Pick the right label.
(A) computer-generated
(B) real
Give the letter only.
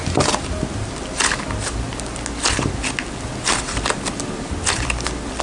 B